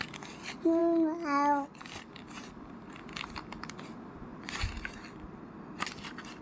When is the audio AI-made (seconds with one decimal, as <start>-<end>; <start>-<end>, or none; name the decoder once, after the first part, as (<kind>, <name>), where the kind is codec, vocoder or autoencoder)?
none